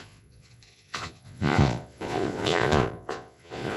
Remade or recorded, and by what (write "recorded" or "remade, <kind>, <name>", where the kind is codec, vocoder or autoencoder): remade, vocoder, Vocos